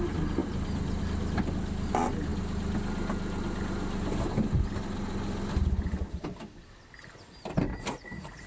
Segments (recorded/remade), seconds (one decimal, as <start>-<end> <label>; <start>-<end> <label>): 0.0-7.7 recorded; 7.7-8.5 remade